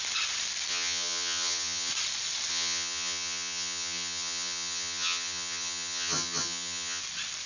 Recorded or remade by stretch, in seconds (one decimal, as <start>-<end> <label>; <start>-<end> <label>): 0.0-0.7 recorded; 0.7-1.9 remade; 1.9-2.5 recorded; 2.5-7.0 remade; 7.0-7.5 recorded